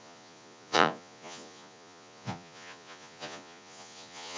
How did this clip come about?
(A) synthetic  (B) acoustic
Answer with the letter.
A